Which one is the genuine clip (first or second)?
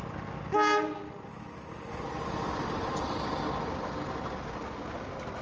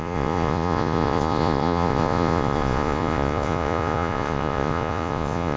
first